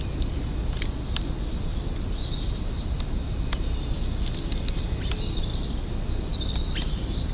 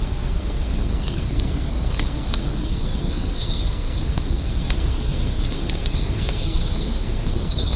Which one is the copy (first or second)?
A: second